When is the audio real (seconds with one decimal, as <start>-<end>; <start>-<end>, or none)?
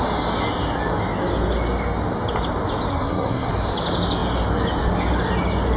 0.0-2.9; 3.5-5.8